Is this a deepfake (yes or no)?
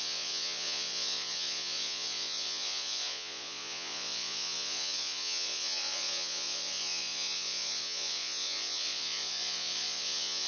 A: yes